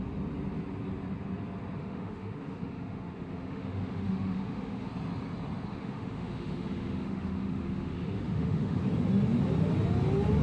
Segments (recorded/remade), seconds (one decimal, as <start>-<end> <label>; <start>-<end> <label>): 0.0-1.8 recorded; 1.8-4.9 remade; 4.9-5.7 recorded; 5.7-8.8 remade; 8.8-10.4 recorded

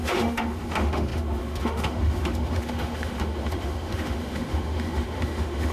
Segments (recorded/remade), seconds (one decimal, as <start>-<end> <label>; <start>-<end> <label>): 0.0-5.7 remade